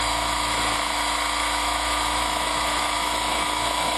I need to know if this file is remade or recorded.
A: remade